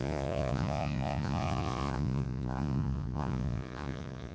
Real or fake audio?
fake